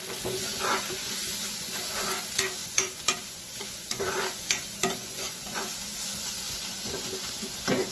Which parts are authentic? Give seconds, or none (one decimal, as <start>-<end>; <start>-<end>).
none